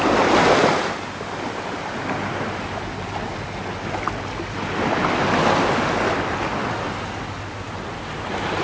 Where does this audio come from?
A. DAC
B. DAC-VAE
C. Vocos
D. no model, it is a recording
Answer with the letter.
D